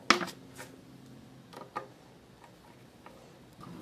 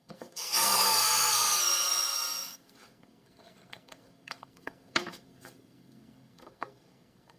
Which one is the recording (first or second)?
first